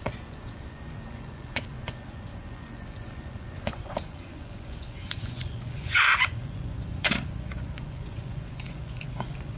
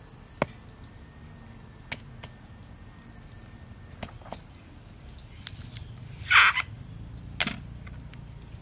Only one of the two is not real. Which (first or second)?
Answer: first